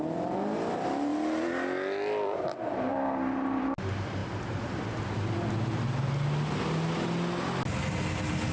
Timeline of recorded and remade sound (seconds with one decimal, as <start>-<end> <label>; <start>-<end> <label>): 0.0-1.1 recorded; 1.1-2.5 remade; 2.5-8.5 recorded